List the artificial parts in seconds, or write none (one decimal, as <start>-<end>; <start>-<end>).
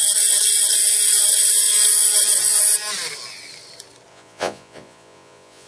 4.1-5.7